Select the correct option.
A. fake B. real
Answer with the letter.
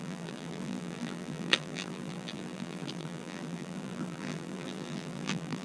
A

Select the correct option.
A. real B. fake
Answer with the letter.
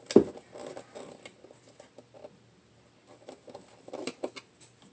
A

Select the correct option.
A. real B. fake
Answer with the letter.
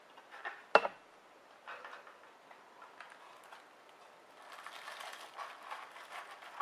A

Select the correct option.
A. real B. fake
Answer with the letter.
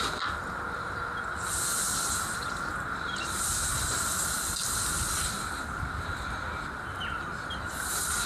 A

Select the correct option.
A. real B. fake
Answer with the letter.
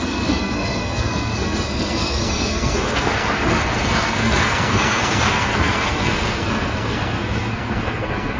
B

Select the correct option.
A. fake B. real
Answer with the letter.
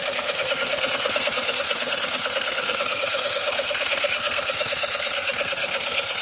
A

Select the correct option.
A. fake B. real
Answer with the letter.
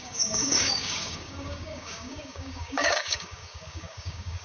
A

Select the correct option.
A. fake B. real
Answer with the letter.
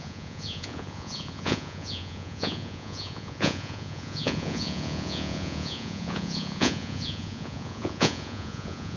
A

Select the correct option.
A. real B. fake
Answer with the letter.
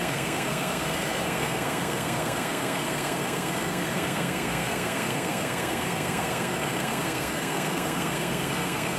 B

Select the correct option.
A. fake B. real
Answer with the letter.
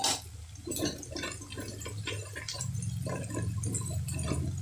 B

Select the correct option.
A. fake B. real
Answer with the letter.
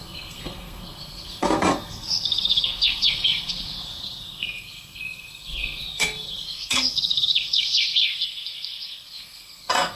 A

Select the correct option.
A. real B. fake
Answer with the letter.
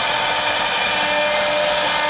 A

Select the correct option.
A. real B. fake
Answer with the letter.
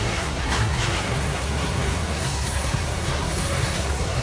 B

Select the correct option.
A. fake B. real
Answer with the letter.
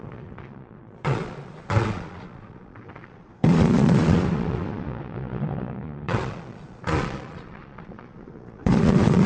A